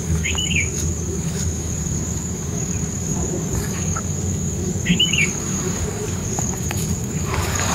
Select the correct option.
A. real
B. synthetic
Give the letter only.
B